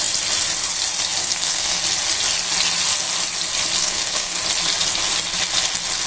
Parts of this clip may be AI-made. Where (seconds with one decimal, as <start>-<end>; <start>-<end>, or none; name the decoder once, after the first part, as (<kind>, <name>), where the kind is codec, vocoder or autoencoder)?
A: 1.2-1.8 (codec, SNAC); 3.8-4.4